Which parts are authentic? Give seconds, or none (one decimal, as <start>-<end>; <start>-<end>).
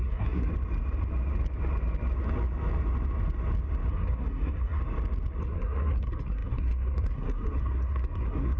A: 0.5-3.9; 4.8-5.4